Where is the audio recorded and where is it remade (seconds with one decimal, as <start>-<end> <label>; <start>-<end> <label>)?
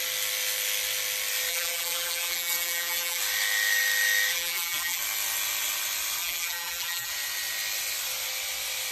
0.0-1.5 recorded; 1.5-3.2 remade; 3.2-4.3 recorded; 4.3-5.0 remade; 5.0-6.2 recorded; 6.2-7.1 remade; 7.1-8.9 recorded